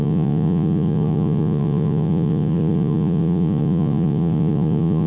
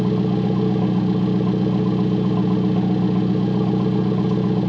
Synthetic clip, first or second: first